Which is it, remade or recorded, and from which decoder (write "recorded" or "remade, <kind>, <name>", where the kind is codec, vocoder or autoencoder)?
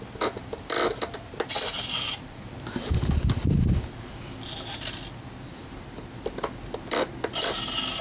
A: recorded